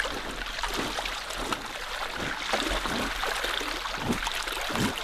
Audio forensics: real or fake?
real